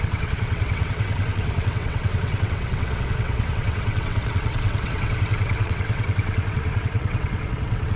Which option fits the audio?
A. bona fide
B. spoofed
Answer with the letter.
B